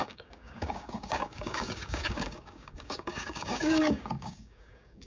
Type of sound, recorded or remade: remade